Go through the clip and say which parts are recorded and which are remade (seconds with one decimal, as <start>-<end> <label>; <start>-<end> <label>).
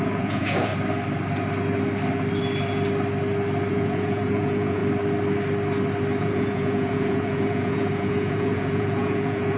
0.0-0.7 remade; 0.7-3.7 recorded; 3.7-4.8 remade; 4.8-6.2 recorded; 6.2-9.6 remade